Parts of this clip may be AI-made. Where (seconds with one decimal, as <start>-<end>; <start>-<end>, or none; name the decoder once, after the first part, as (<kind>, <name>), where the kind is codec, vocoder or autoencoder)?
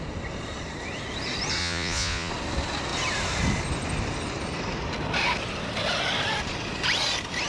1.6-2.3 (vocoder, Vocos)